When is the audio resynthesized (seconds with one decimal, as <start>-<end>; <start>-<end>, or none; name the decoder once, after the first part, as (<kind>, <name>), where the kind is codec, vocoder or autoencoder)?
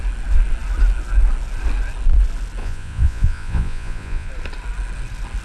2.6-4.3 (vocoder, Vocos)